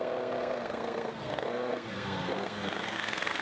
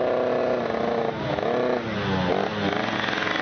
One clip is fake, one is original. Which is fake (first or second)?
first